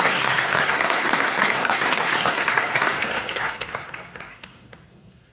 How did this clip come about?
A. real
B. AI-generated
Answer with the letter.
B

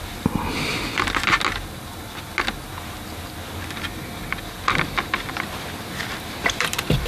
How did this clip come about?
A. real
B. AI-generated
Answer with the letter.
A